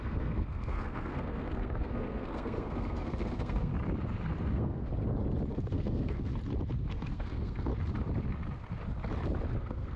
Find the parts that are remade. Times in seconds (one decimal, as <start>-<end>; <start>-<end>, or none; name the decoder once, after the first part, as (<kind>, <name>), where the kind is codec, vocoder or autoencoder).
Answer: 0.0-3.7 (codec, SNAC); 4.4-4.9; 5.5-6.3; 6.9-7.7; 9.6-10.0